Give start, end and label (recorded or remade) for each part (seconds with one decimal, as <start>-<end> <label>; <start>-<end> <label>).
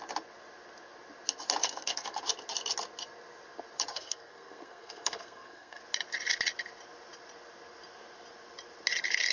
0.0-1.6 recorded; 1.6-2.2 remade; 2.2-3.9 recorded; 3.9-5.8 remade; 5.8-9.3 recorded